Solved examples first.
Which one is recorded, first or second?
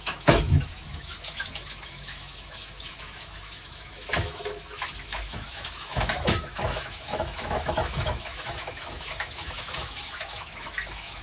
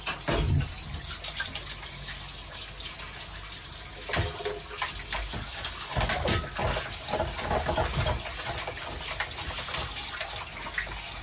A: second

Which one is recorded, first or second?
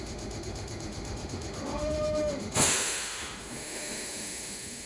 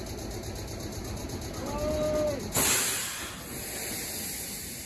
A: second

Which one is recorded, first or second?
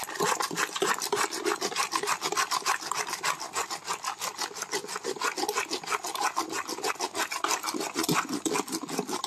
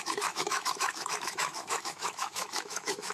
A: first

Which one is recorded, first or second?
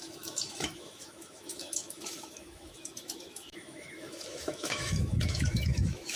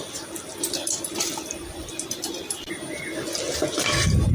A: second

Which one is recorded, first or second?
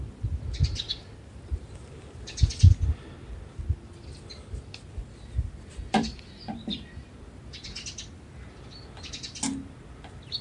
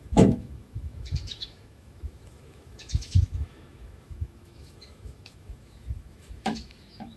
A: first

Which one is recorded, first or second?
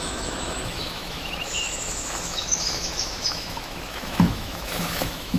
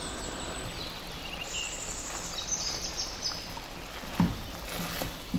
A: second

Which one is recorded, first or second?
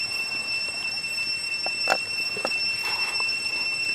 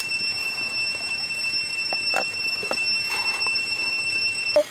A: first